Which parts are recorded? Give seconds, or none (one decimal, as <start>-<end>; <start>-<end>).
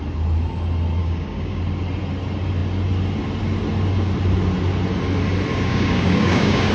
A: 0.0-1.0; 1.6-5.5